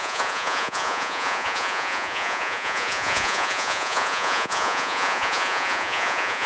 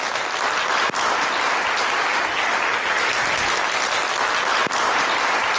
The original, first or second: second